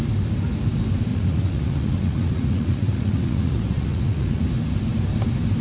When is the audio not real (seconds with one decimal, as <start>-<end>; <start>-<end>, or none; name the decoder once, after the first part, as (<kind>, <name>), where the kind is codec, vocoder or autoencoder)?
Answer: 1.1-4.5 (vocoder, Vocos)